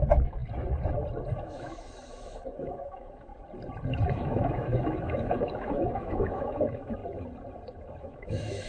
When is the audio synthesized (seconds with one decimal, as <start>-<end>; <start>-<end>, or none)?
0.0-0.4; 1.4-3.3; 4.1-7.0; 8.0-8.7